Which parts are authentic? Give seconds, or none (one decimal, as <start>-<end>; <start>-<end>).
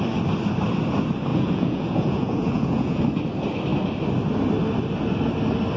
0.0-1.3; 3.0-5.8